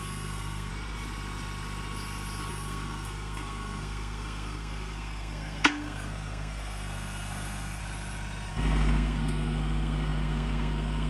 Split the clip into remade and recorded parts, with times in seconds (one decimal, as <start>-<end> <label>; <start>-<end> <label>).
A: 0.0-0.7 remade; 0.7-2.5 recorded; 2.5-7.8 remade; 7.8-8.5 recorded; 8.5-11.1 remade